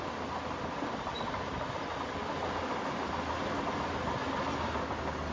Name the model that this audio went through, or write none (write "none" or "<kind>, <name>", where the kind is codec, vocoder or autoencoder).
none